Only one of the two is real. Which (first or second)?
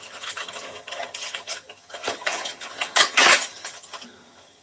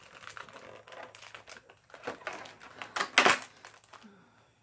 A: second